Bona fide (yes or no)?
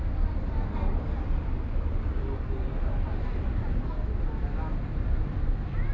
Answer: yes